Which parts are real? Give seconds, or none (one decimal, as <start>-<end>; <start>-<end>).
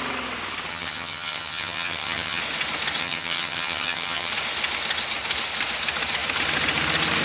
0.0-0.7; 2.4-3.0; 4.3-7.2